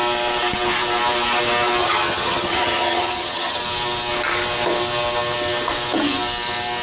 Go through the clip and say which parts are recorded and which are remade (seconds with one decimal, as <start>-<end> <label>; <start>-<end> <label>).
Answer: 0.0-1.8 recorded; 1.8-3.6 remade; 3.6-6.8 recorded